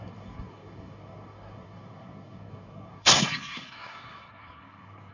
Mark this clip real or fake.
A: fake